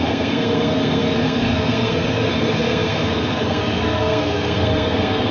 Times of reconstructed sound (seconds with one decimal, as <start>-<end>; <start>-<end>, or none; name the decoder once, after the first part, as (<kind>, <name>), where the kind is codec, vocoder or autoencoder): 0.0-5.3 (codec, SNAC)